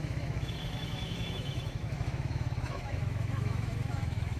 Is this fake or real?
fake